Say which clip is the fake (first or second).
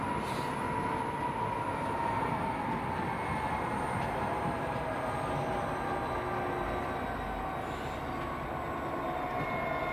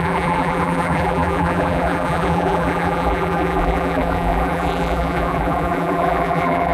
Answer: second